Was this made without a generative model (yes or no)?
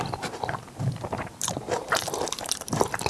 no